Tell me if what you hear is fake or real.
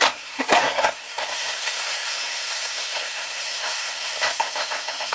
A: fake